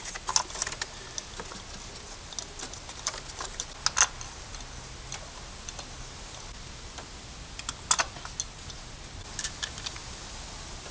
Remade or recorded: recorded